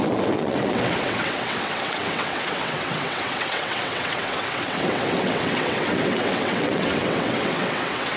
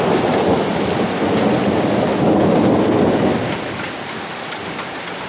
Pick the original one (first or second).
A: second